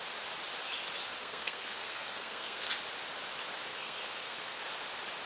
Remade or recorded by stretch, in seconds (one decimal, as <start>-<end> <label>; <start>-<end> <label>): 0.0-1.2 recorded; 1.2-2.7 remade; 2.7-3.7 recorded; 3.7-4.6 remade; 4.6-5.3 recorded